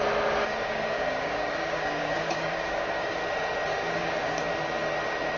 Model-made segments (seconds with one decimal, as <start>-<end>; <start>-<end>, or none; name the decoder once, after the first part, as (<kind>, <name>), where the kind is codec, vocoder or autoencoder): 0.5-3.2 (codec, DAC); 3.7-4.4